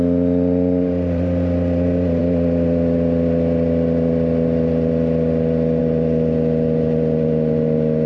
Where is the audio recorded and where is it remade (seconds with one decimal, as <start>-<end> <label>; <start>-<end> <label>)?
0.0-8.1 recorded